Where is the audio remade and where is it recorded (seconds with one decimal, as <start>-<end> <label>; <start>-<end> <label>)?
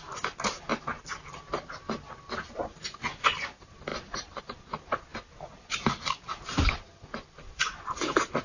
0.0-0.7 remade; 0.7-2.6 recorded; 2.6-8.4 remade